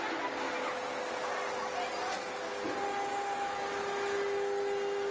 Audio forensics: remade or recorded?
recorded